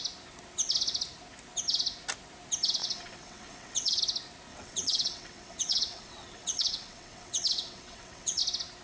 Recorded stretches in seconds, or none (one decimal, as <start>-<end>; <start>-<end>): 0.0-2.8; 4.0-4.5; 8.4-8.8